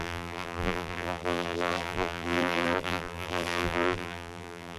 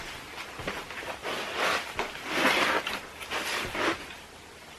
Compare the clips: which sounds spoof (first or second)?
first